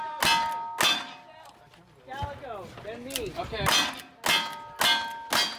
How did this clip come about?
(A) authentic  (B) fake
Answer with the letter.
A